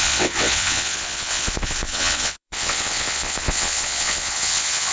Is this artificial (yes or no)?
yes